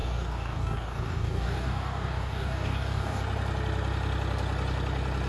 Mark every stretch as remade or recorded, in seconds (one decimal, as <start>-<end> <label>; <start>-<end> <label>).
0.0-3.2 remade; 3.2-5.3 recorded